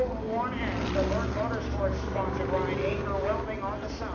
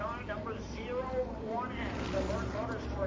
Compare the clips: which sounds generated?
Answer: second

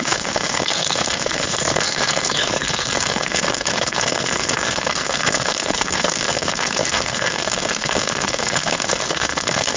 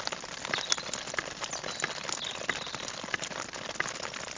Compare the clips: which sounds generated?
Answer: first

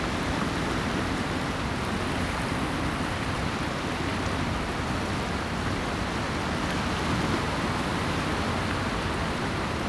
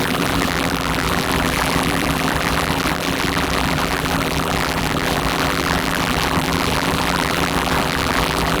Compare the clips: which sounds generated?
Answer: second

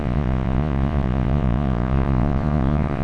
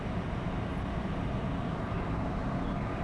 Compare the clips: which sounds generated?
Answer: first